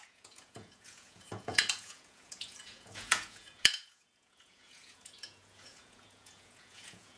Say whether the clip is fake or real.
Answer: fake